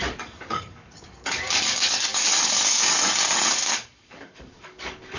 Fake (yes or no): yes